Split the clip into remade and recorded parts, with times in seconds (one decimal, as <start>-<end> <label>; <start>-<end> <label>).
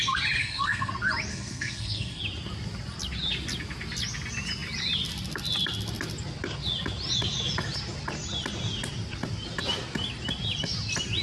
0.0-0.4 recorded; 0.4-0.9 remade; 0.9-1.3 recorded; 1.3-2.2 remade; 2.2-11.2 recorded